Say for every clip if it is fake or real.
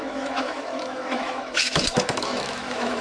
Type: fake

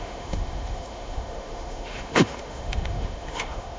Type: fake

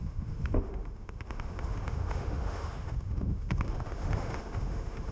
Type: fake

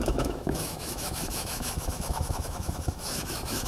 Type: fake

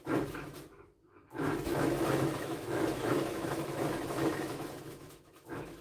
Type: fake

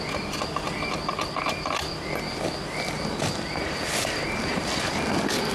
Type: real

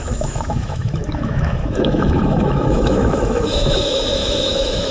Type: fake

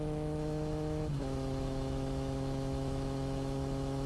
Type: fake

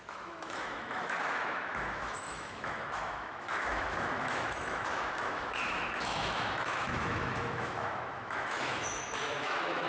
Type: fake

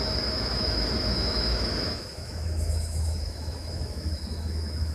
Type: fake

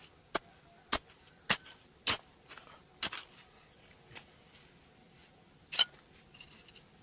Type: real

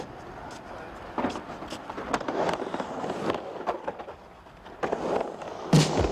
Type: real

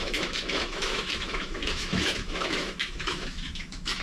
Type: fake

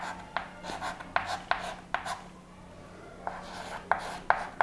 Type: real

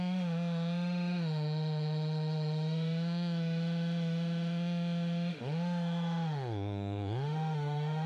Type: fake